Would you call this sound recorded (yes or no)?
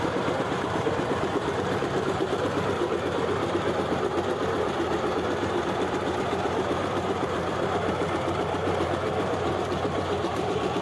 no